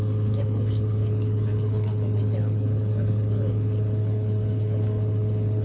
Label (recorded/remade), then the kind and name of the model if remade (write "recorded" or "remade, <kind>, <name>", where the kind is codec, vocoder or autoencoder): remade, codec, HILCodec